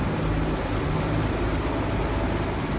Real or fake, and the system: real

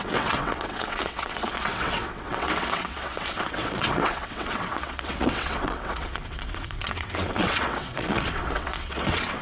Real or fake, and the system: fake, vocoder, WaveNeXt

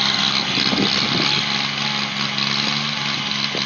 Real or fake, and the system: real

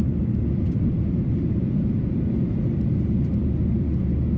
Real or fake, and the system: fake, vocoder, BigVGAN v2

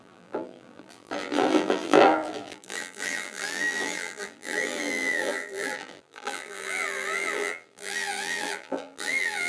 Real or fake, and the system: fake, vocoder, BigVGAN v2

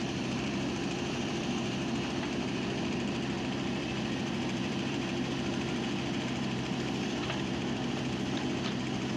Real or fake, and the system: fake, vocoder, BigVGAN v2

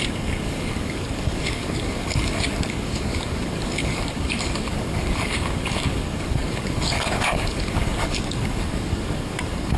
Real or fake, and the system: fake, codec, DAC